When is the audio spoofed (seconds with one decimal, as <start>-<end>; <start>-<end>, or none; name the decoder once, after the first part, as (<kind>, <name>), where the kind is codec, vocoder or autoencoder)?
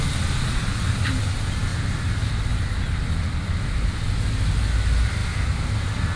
none